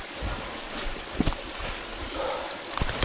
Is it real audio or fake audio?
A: real